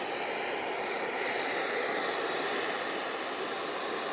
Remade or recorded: recorded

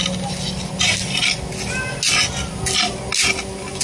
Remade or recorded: recorded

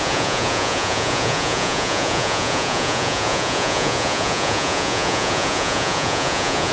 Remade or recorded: remade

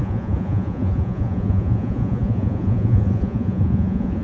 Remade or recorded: remade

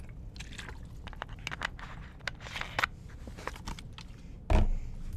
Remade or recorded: recorded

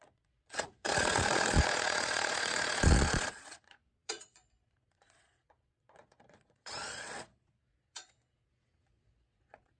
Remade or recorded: remade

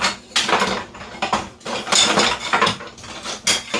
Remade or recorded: recorded